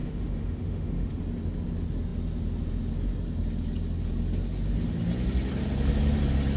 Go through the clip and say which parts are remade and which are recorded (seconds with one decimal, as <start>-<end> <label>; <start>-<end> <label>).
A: 0.0-1.2 remade; 1.2-6.6 recorded